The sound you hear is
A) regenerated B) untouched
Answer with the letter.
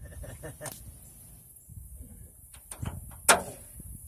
B